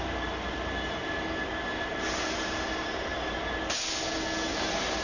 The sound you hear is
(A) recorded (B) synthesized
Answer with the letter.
A